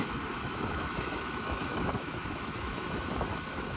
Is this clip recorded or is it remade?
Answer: remade